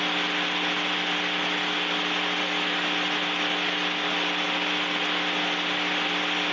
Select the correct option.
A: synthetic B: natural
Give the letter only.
B